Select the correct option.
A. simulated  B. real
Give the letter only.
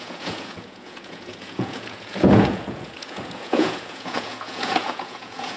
A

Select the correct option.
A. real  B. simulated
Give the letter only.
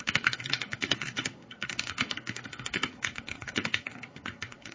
B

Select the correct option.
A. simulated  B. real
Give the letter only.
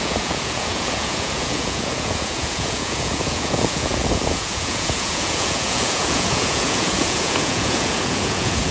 A